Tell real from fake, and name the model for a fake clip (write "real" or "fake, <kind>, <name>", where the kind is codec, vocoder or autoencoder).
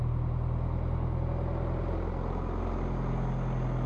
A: real